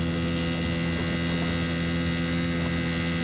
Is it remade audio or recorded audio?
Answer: recorded